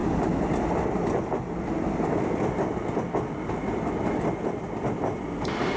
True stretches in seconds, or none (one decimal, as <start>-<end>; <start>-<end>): 0.0-5.8